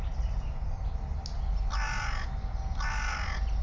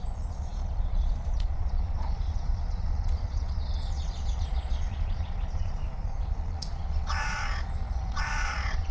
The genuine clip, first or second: first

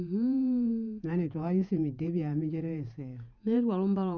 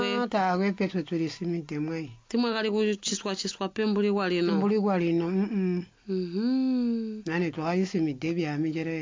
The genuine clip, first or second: second